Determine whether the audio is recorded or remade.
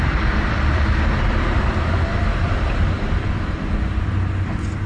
remade